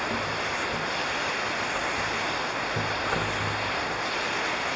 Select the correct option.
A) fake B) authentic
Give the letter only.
B